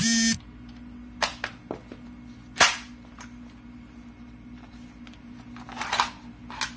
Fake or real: real